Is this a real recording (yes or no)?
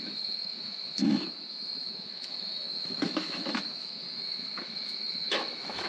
no